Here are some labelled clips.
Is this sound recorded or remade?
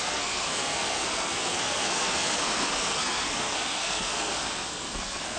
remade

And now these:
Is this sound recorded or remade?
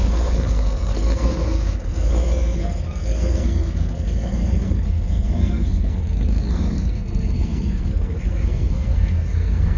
remade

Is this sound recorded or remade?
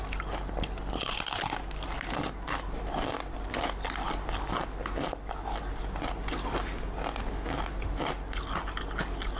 recorded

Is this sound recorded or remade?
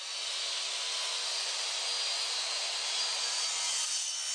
recorded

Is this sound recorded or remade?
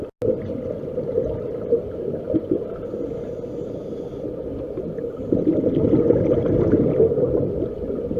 recorded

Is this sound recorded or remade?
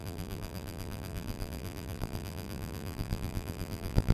remade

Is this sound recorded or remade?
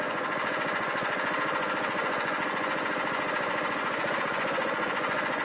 remade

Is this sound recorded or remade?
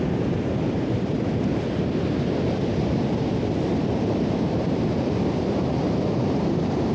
remade